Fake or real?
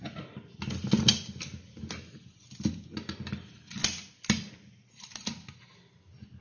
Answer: real